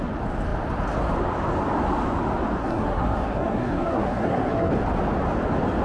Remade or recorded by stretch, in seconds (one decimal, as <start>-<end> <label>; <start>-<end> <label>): 0.0-2.6 recorded; 2.6-4.7 remade; 4.7-5.8 recorded